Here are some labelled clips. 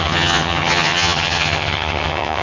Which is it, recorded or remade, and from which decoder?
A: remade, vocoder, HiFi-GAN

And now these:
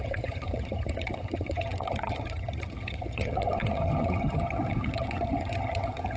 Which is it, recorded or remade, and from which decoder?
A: remade, vocoder, HiFi-GAN